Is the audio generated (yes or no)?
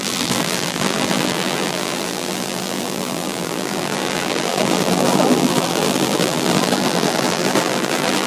yes